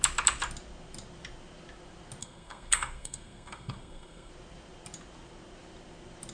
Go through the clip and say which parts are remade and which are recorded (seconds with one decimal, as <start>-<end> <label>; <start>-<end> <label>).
0.0-2.2 recorded; 2.2-4.3 remade; 4.3-6.3 recorded

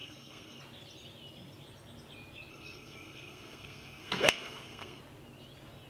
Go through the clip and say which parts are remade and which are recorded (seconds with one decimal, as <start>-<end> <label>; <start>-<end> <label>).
0.0-0.6 remade; 0.6-2.5 recorded; 2.5-5.0 remade; 5.0-5.9 recorded

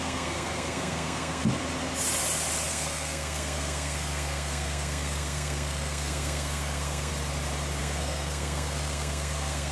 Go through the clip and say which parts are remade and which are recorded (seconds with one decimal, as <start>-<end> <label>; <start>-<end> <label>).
0.0-1.4 remade; 1.4-2.7 recorded; 2.7-7.1 remade; 7.1-7.8 recorded; 7.8-9.7 remade

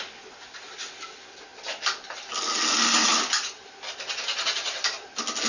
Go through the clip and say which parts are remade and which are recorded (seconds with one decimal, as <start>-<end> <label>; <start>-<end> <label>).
0.0-5.5 recorded

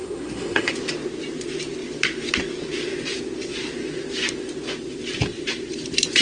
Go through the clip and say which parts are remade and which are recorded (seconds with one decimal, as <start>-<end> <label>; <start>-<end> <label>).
0.0-0.7 remade; 0.7-6.2 recorded

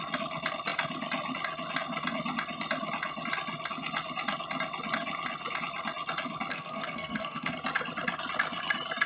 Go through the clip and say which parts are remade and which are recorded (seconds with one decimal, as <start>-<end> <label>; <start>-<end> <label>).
0.0-6.5 recorded; 6.5-7.5 remade; 7.5-9.1 recorded

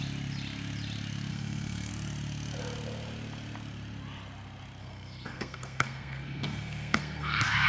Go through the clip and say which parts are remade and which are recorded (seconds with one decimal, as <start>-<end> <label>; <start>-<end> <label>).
0.0-1.3 recorded; 1.3-1.9 remade; 1.9-4.8 recorded; 4.8-7.7 remade

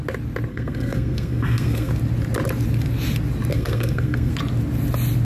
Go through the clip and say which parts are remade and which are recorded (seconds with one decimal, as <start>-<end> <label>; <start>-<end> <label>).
0.0-0.5 recorded; 0.5-1.9 remade; 1.9-3.5 recorded; 3.5-4.3 remade; 4.3-5.2 recorded